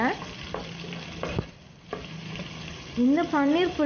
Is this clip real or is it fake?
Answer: real